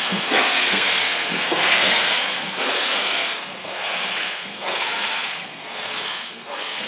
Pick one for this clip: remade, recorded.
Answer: remade